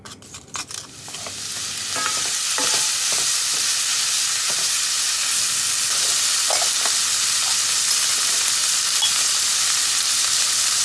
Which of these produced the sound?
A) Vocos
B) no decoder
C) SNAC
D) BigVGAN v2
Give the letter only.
B